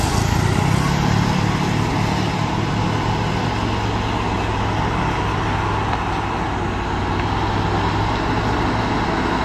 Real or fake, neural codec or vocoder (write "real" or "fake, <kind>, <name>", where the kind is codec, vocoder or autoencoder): real